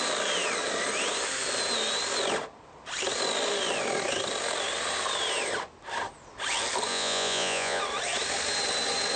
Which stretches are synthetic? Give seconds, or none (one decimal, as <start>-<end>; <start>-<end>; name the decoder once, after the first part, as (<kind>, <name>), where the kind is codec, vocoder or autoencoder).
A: 6.9-7.8 (vocoder, Vocos)